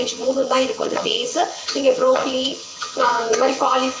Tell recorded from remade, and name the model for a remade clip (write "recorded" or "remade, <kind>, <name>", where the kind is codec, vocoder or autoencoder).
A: remade, vocoder, HiFi-GAN